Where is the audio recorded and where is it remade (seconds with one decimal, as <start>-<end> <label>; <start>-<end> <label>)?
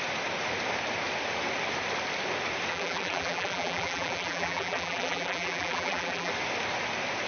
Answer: 0.0-2.7 recorded; 2.7-6.3 remade; 6.3-7.3 recorded